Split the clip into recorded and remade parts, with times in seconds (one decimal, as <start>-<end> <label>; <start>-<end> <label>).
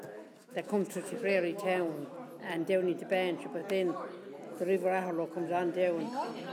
0.0-0.4 recorded; 0.4-2.1 remade; 2.1-6.5 recorded